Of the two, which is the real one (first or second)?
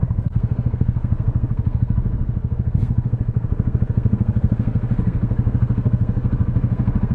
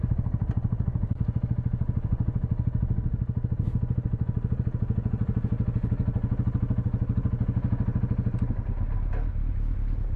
second